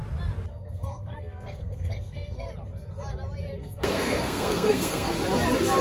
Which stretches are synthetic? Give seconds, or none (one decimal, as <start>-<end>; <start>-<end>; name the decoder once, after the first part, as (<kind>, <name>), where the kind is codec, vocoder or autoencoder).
0.5-2.5 (codec, SNAC); 3.6-5.1